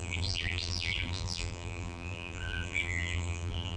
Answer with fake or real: fake